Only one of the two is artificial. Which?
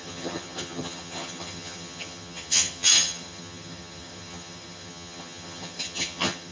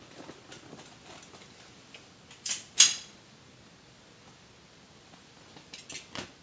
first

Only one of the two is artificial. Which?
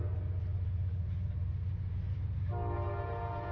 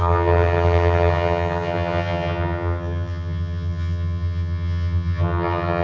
second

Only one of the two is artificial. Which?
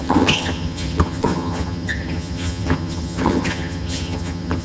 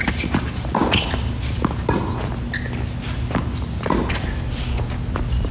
first